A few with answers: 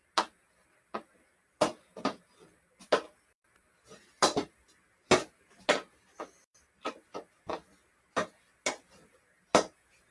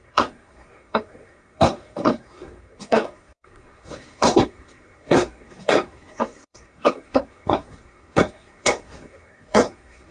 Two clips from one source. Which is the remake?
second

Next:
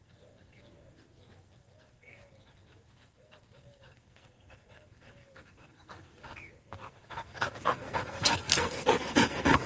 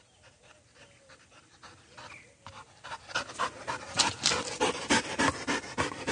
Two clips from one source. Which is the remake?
first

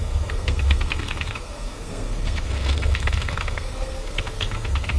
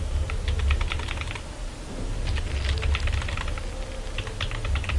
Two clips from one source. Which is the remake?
first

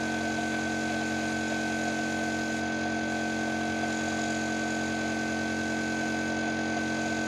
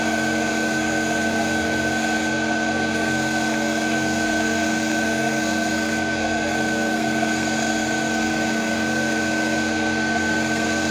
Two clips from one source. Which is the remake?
second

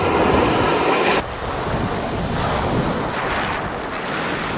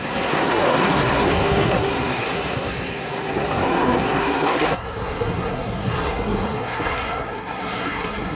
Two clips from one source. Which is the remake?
second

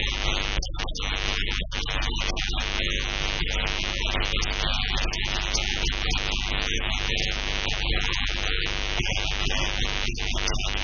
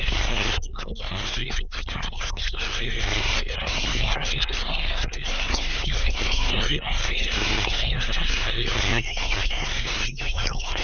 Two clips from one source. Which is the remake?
second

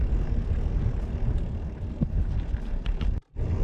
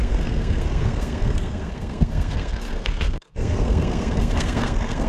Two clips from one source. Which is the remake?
second